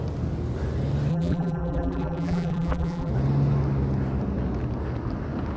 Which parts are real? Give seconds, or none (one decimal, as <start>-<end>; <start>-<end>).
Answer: 0.0-1.1; 3.1-5.6